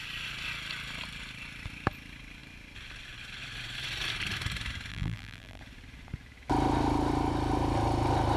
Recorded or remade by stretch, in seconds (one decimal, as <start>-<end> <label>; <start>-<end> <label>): 0.0-4.9 recorded; 4.9-5.6 remade; 5.6-8.4 recorded